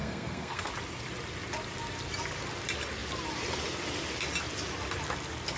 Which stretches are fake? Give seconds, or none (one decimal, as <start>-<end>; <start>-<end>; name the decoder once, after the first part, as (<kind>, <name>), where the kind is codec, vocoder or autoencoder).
0.0-0.7 (codec, SNAC)